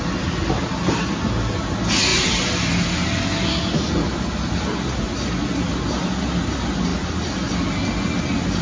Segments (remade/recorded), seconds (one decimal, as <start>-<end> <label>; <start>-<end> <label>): 0.0-8.6 recorded